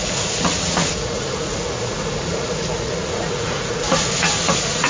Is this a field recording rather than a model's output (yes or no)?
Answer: no